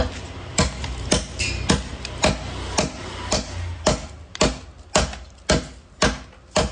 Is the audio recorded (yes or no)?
yes